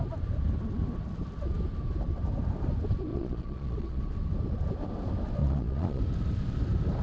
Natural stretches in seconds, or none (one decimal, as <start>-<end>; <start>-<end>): 0.0-3.1; 4.0-5.4; 6.0-7.0